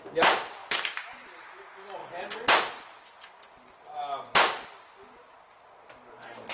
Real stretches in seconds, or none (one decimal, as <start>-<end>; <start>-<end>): 0.0-6.5